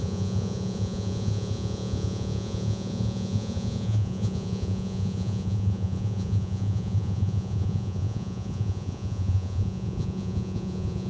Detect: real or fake fake